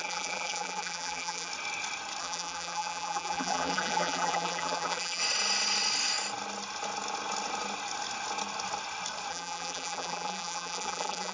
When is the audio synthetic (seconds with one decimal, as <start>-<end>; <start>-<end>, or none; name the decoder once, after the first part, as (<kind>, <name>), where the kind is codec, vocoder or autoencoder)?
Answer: 0.0-1.5 (vocoder, BigVGAN v2); 2.2-5.2; 9.3-11.3